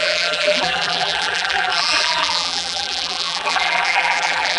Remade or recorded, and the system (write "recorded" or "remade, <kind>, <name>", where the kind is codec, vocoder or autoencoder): remade, vocoder, BigVGAN v2